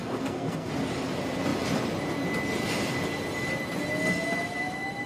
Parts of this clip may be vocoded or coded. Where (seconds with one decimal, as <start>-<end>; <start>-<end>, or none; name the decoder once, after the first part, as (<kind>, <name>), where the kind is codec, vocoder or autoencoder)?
0.0-0.7 (codec, SNAC)